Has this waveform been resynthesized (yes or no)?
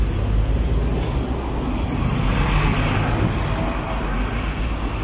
no